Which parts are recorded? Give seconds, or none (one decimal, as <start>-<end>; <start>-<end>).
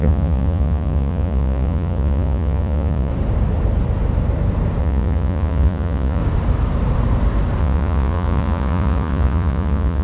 3.1-4.8; 6.2-7.6